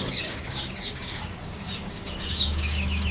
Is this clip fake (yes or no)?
yes